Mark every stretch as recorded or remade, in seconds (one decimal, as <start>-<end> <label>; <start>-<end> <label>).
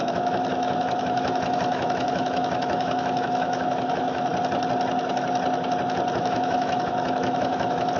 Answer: 0.0-4.3 remade; 4.3-6.2 recorded; 6.2-8.0 remade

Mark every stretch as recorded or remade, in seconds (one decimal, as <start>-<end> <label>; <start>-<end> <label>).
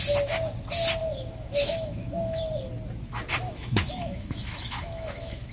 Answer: 0.0-1.0 recorded; 1.0-2.4 remade; 2.4-3.5 recorded; 3.5-5.5 remade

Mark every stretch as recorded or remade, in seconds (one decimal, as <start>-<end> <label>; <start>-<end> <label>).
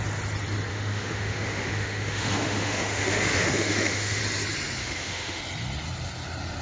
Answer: 0.0-0.7 recorded; 0.7-4.2 remade; 4.2-4.8 recorded; 4.8-5.4 remade; 5.4-6.6 recorded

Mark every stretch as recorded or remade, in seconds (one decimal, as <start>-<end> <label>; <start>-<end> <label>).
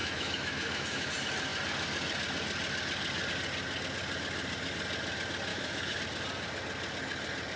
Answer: 0.0-1.1 remade; 1.1-5.5 recorded; 5.5-6.0 remade; 6.0-7.6 recorded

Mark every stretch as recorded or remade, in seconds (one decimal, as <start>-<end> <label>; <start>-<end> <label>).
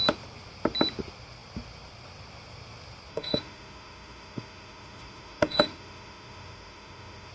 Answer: 0.0-3.1 recorded; 3.1-7.3 remade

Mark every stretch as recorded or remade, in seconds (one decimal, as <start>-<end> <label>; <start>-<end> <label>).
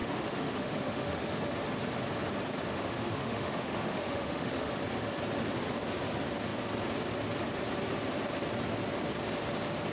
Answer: 0.0-1.4 remade; 1.4-2.7 recorded; 2.7-4.7 remade; 4.7-9.9 recorded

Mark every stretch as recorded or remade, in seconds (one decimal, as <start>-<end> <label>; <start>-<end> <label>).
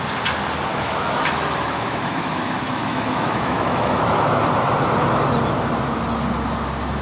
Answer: 0.0-0.7 recorded; 0.7-4.4 remade; 4.4-7.0 recorded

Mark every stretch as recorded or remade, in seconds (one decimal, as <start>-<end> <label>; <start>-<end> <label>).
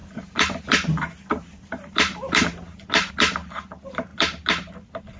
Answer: 0.0-5.2 recorded